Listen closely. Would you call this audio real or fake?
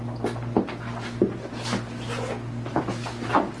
real